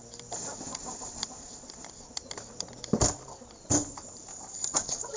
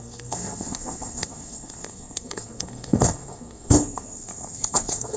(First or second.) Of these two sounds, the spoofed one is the second